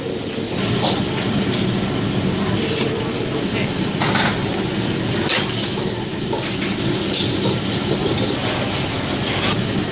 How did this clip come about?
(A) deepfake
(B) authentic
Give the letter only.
B